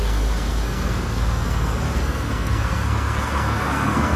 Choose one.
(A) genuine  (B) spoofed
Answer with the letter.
B